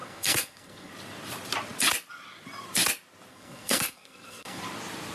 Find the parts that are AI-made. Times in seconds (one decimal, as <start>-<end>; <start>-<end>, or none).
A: 0.0-0.9; 3.3-4.6